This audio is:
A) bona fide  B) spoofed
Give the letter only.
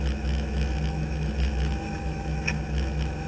B